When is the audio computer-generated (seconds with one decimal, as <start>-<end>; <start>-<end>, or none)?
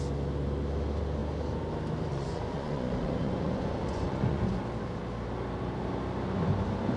2.1-4.6